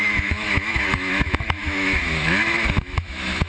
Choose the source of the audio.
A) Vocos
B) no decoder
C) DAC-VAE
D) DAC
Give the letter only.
C